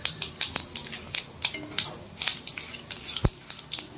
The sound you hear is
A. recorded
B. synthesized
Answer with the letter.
A